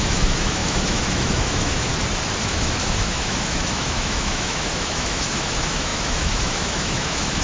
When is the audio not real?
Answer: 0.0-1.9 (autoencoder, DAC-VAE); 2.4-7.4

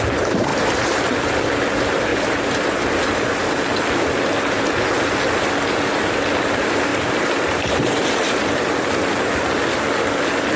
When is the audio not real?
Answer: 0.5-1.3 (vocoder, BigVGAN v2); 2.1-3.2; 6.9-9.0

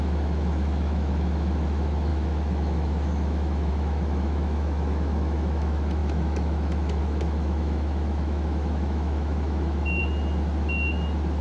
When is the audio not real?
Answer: 0.0-10.0 (autoencoder, DAC-VAE)